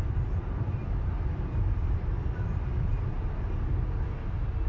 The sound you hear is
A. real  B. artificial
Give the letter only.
A